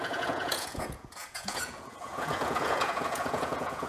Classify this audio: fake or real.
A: fake